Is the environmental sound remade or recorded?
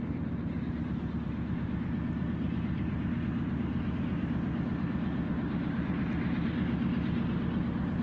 recorded